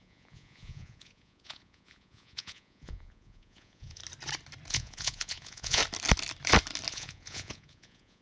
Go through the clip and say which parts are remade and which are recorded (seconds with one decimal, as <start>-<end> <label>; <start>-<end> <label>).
0.0-4.0 remade; 4.0-4.7 recorded; 4.7-5.8 remade; 5.8-6.9 recorded; 6.9-8.2 remade